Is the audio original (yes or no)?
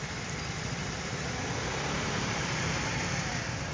yes